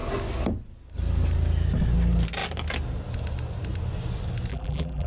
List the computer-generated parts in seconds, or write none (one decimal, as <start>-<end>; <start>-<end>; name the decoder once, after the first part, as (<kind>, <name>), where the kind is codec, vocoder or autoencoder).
4.5-5.1 (vocoder, BigVGAN v2)